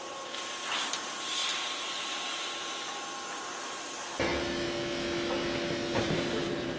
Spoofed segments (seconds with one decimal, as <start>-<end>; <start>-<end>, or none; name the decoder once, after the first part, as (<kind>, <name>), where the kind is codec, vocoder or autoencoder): 0.0-4.3 (vocoder, BigVGAN v2); 5.9-6.8